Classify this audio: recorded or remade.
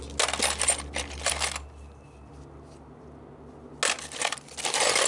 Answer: recorded